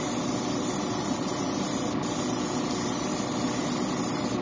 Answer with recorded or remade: recorded